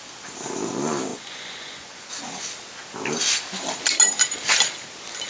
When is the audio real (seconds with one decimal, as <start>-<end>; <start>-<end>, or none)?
0.0-1.1; 2.1-5.3